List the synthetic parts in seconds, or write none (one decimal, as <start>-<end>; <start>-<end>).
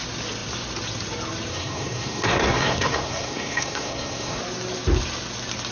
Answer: 1.5-4.4